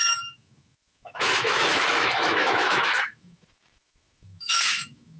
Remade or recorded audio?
remade